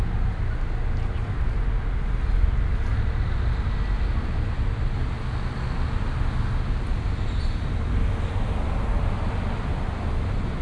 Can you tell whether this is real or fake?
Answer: real